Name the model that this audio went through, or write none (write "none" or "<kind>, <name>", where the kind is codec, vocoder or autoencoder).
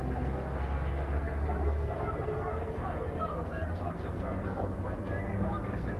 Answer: codec, SNAC